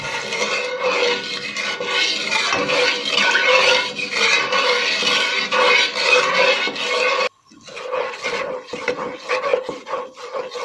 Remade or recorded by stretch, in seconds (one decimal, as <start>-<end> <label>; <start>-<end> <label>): 0.0-10.6 recorded